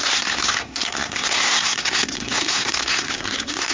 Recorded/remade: remade